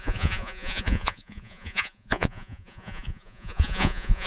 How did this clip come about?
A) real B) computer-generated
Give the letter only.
B